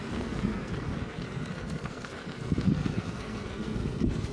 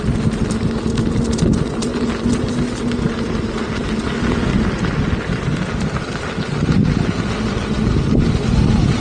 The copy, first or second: first